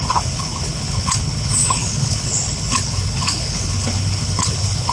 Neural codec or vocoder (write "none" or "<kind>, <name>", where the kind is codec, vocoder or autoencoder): codec, HILCodec